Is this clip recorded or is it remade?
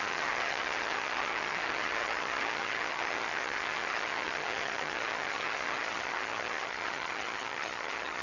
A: remade